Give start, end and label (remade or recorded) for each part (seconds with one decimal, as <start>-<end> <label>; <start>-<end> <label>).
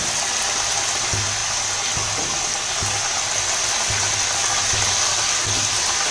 0.0-6.1 recorded